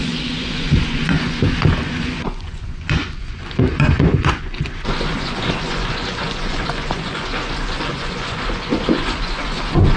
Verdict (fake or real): fake